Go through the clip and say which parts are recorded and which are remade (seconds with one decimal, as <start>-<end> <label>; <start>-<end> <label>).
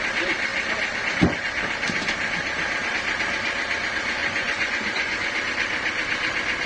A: 0.0-4.2 recorded; 4.2-5.3 remade; 5.3-6.7 recorded